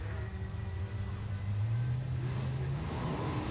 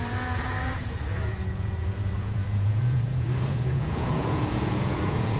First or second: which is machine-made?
second